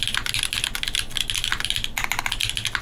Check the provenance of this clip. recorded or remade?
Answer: recorded